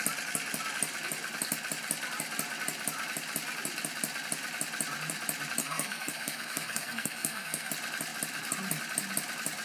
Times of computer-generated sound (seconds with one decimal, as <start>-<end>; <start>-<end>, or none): 5.6-7.7